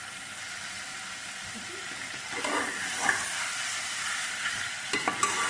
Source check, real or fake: real